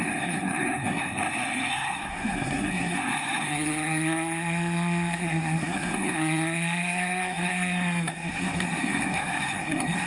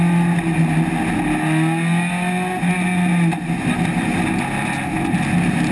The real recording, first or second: second